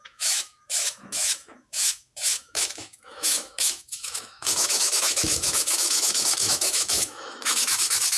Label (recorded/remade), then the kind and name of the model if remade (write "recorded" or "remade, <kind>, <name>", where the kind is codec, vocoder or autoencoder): remade, autoencoder, DAC-VAE